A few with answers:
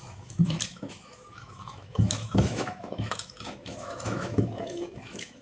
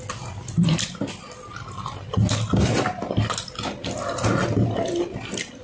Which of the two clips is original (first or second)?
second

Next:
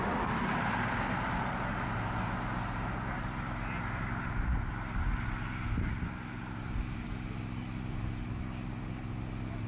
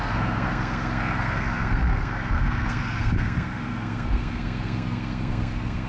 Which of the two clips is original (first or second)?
first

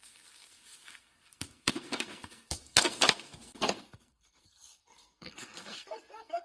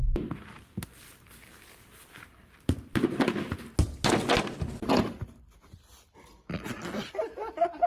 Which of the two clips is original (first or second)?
second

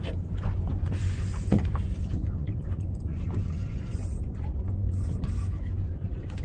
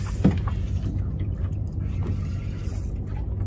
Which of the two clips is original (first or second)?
second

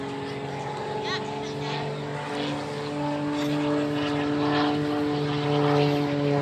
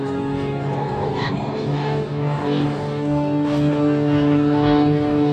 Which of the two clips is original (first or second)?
first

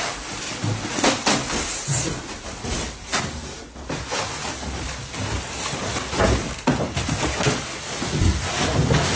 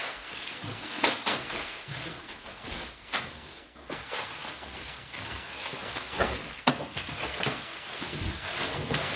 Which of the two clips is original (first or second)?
first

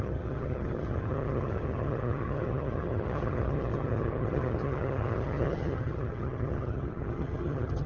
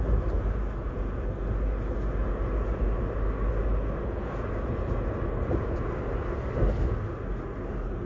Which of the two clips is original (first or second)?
second